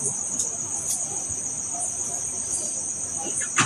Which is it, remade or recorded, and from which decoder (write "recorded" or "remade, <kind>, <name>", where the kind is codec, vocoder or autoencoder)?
recorded